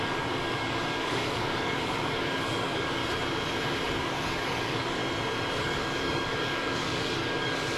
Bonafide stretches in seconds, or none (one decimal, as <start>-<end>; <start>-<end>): 3.0-4.0; 5.0-5.6